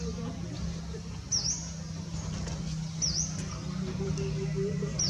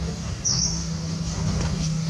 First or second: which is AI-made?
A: second